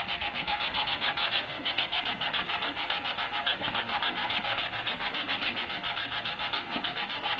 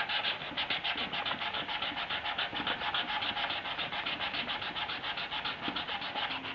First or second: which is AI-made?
first